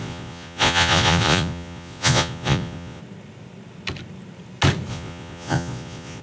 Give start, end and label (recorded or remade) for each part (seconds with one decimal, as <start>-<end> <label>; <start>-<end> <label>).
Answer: 0.0-3.0 remade; 3.0-4.9 recorded; 4.9-6.2 remade